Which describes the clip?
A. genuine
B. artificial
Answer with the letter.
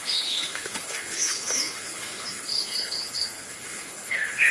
B